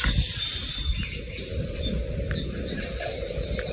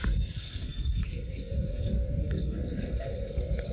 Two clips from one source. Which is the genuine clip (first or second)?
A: first